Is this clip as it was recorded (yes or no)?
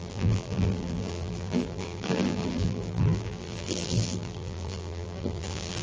no